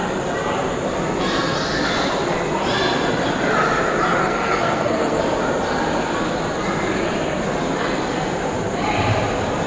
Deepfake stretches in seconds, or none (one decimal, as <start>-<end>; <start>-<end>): 4.2-5.2